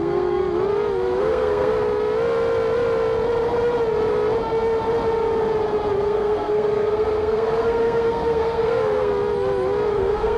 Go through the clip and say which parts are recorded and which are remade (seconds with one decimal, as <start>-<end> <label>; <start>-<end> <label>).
0.0-0.4 remade; 0.4-1.2 recorded; 1.2-1.7 remade; 1.7-6.0 recorded; 6.0-9.1 remade; 9.1-9.9 recorded; 9.9-10.4 remade